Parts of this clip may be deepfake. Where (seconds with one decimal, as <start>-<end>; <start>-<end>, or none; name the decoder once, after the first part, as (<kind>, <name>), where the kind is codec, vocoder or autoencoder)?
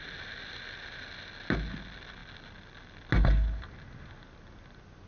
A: none